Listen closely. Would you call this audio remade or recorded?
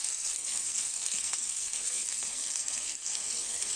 remade